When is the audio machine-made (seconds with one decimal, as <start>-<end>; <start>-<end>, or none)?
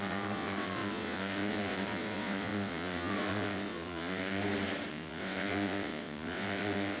0.0-4.4; 4.9-7.0